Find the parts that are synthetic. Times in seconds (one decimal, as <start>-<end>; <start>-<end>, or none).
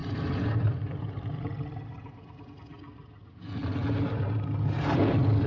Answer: none